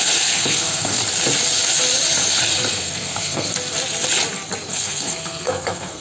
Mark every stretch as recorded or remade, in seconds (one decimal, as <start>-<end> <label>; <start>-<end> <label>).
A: 0.0-1.0 remade; 1.0-2.7 recorded; 2.7-3.5 remade; 3.5-4.7 recorded; 4.7-6.0 remade